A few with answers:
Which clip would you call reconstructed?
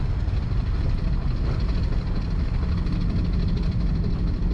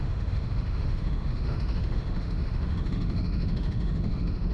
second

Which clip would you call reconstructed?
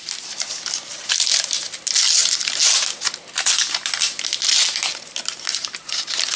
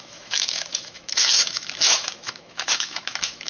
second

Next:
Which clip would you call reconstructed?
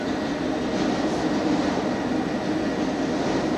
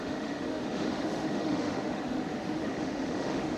second